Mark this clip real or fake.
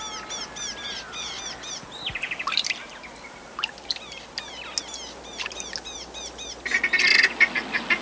real